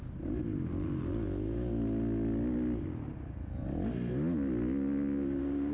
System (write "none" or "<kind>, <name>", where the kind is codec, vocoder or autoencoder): none